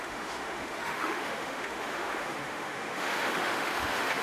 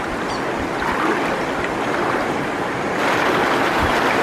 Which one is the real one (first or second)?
second